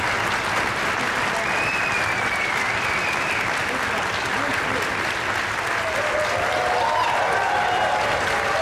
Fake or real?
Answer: real